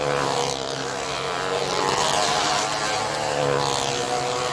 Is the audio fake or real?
real